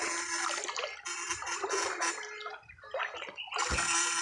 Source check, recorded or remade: recorded